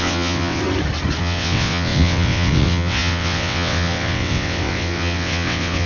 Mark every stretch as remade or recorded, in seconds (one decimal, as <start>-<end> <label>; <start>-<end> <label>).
0.0-0.6 remade; 0.6-1.2 recorded; 1.2-5.9 remade